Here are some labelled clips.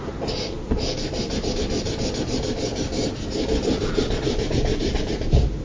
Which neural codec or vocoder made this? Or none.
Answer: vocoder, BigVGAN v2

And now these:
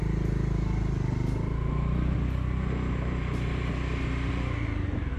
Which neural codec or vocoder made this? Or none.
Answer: none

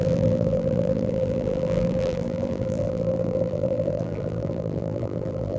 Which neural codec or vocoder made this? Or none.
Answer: vocoder, BigVGAN v2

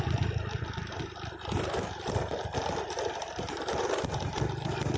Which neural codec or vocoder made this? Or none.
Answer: vocoder, BigVGAN v2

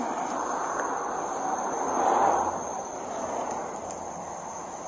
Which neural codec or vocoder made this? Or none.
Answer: none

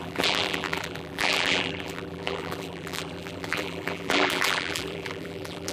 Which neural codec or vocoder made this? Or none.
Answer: vocoder, BigVGAN v2